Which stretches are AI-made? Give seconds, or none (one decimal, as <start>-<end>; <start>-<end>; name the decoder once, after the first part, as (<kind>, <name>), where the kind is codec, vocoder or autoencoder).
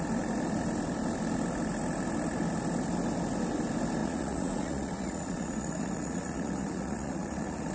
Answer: 4.0-7.7 (vocoder, Vocos)